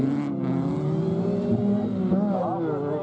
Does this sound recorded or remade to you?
recorded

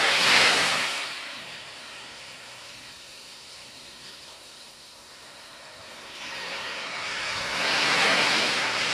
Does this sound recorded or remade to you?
remade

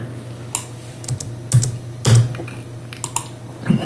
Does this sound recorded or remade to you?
recorded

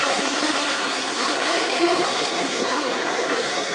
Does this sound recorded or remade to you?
remade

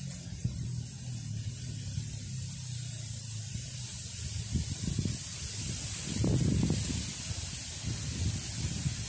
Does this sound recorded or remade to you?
recorded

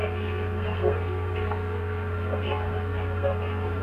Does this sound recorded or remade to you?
remade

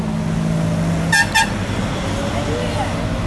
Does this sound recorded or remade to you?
recorded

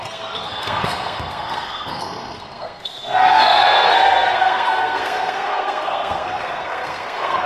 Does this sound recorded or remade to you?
remade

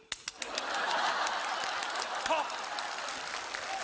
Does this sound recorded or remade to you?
recorded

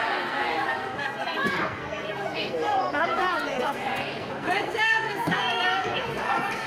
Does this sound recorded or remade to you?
remade